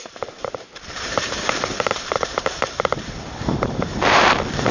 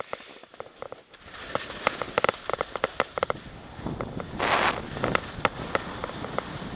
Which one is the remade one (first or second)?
first